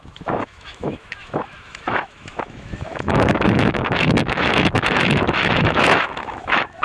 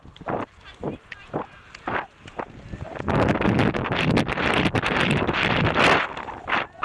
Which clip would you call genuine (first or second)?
second